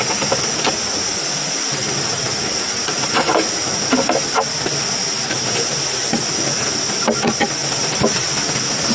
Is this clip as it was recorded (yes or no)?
yes